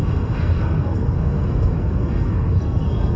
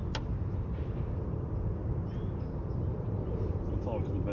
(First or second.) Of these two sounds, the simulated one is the first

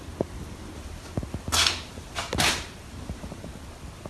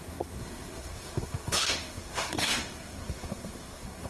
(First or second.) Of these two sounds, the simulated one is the second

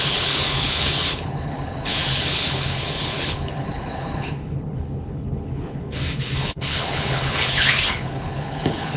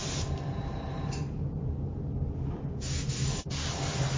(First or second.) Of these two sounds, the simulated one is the first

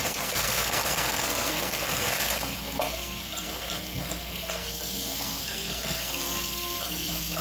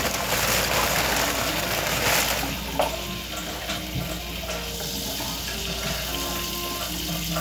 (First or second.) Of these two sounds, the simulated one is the first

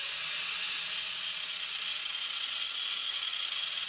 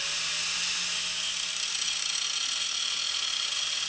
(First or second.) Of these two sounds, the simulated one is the first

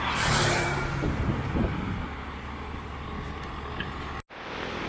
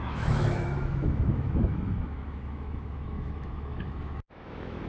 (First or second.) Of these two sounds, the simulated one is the second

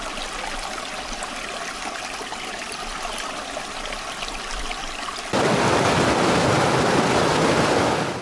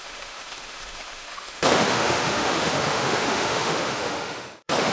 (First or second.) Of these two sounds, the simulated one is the second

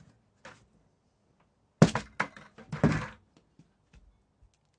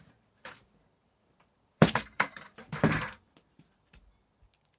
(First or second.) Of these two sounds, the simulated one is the second